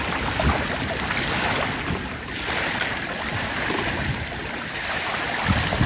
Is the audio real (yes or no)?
yes